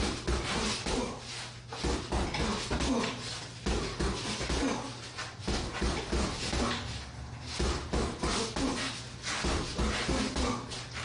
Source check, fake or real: real